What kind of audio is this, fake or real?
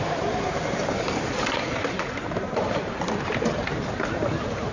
fake